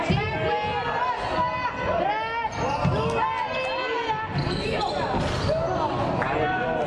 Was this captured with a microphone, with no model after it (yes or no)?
yes